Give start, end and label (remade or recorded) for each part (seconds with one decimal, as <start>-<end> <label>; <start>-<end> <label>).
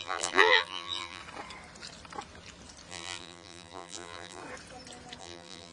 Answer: 0.0-1.2 remade; 1.2-2.9 recorded; 2.9-4.4 remade; 4.4-5.2 recorded; 5.2-5.7 remade